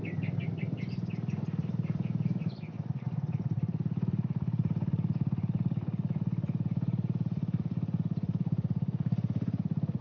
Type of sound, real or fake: fake